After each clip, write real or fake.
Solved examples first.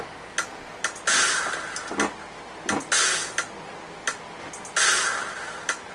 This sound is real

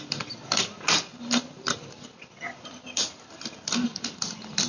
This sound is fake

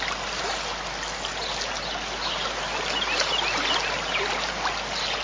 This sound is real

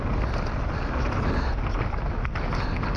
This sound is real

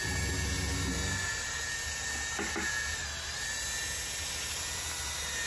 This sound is real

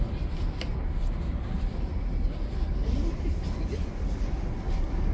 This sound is real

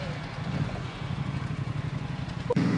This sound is fake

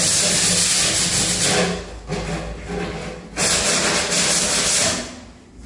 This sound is real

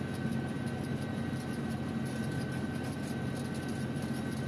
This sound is real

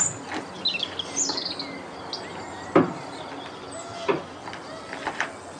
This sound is real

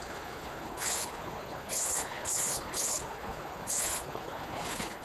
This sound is fake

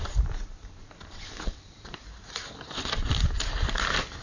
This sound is fake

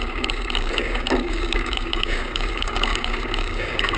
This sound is fake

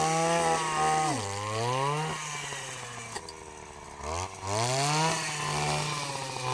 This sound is real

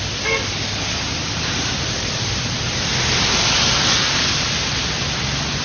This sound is real